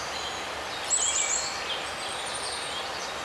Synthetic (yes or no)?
no